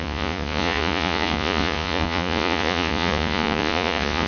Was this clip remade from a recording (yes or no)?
yes